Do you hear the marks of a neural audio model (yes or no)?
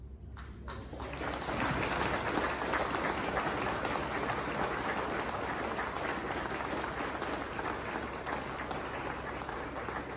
no